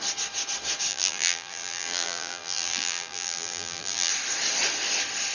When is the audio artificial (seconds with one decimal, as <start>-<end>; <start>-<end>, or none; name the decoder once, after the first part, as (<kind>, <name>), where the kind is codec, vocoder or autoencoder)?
0.9-4.1 (vocoder, BigVGAN v2)